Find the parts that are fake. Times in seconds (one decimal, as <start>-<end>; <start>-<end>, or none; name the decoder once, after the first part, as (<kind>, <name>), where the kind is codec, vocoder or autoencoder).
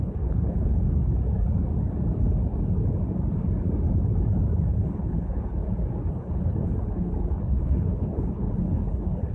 0.0-0.7 (codec, HILCodec); 4.7-5.6; 6.1-9.3